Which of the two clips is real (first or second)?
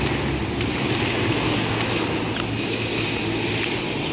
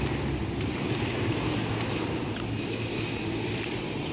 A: first